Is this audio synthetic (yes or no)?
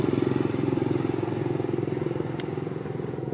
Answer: no